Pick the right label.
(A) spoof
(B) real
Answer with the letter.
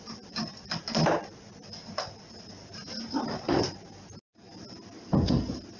B